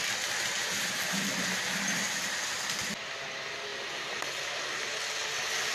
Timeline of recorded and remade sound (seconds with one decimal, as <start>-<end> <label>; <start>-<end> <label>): 0.0-0.6 recorded; 0.6-1.2 remade; 1.2-5.7 recorded